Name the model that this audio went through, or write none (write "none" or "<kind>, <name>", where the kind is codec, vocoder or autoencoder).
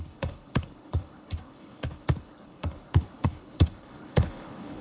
codec, HILCodec